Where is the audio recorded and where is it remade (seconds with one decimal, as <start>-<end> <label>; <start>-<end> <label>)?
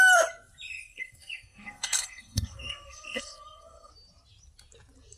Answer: 0.0-0.8 recorded; 0.8-3.9 remade; 3.9-5.2 recorded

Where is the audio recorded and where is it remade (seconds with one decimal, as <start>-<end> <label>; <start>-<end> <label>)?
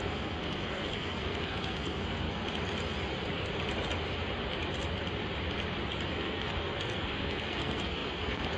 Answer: 0.0-2.4 remade; 2.4-6.1 recorded; 6.1-8.6 remade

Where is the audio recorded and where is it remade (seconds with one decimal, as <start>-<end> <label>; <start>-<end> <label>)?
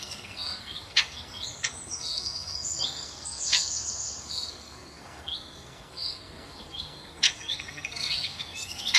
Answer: 0.0-9.0 remade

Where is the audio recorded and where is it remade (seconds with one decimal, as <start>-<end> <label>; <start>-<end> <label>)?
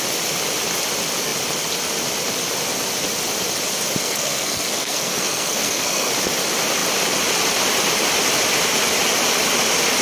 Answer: 0.0-4.0 recorded; 4.0-6.1 remade; 6.1-10.0 recorded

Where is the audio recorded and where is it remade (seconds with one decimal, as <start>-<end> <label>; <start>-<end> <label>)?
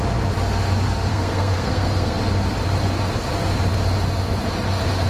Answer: 0.0-1.1 recorded; 1.1-2.2 remade; 2.2-5.1 recorded